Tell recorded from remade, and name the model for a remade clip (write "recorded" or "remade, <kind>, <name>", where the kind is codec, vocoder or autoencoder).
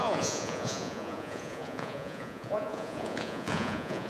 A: remade, vocoder, Vocos